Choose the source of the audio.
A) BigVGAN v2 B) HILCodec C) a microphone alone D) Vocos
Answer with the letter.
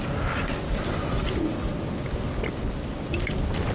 C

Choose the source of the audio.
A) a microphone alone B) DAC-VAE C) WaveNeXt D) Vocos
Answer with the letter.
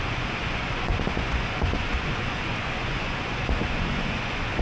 D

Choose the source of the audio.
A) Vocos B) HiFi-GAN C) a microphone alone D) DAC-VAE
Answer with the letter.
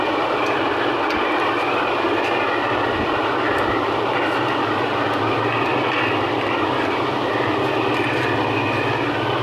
C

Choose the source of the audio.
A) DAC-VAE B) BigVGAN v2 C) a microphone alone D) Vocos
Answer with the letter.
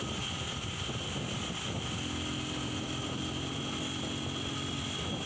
C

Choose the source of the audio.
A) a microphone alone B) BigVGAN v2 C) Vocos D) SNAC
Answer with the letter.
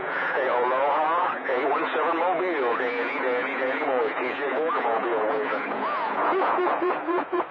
C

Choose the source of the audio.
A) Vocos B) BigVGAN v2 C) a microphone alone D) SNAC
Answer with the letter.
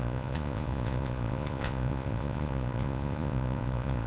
A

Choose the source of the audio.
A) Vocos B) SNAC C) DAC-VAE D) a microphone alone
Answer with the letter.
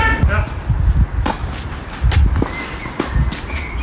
D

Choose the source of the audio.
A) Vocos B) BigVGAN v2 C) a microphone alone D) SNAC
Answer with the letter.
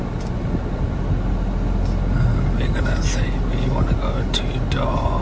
C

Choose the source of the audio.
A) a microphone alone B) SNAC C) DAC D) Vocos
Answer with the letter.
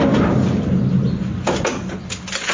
A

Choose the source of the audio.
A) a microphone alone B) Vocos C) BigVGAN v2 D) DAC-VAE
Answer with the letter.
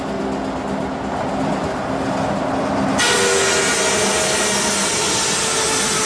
A